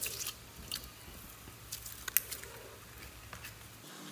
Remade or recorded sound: recorded